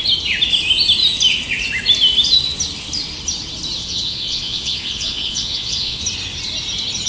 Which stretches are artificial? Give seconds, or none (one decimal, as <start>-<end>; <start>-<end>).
3.8-6.0

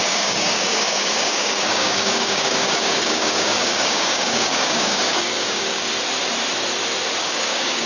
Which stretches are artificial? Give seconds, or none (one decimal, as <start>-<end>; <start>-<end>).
0.0-5.9; 7.2-7.9

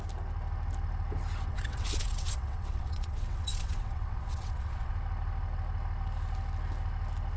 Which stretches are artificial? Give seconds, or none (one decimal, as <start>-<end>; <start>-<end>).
1.5-4.9

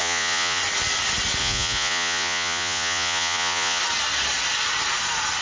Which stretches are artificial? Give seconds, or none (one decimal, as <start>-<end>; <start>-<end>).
0.0-0.6; 1.4-3.8